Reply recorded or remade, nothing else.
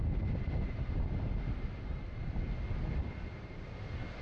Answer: recorded